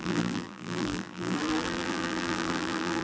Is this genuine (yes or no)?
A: no